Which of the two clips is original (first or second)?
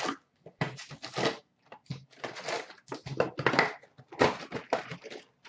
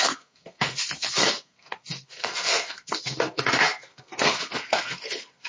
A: first